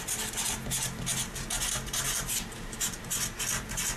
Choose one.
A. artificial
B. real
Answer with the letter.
B